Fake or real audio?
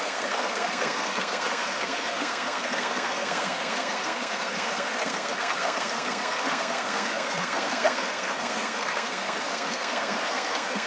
fake